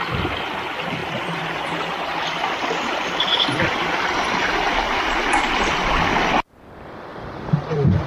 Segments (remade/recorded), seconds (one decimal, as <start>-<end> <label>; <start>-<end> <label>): 0.0-1.0 recorded; 1.0-5.9 remade; 5.9-7.1 recorded; 7.1-8.1 remade